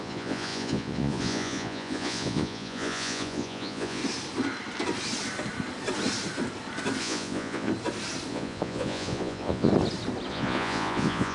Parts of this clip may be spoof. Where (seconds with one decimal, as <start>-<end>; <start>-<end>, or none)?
0.0-4.0; 7.0-7.7; 8.3-9.7; 10.3-11.3